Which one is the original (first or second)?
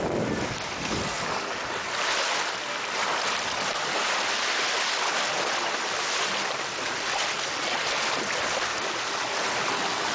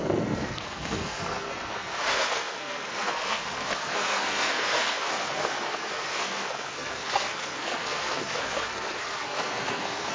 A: first